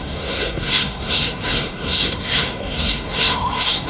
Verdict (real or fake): fake